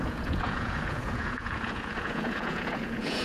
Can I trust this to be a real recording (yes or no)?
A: no